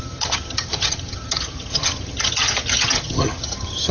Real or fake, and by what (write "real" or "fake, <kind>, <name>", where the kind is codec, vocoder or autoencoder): fake, vocoder, HiFi-GAN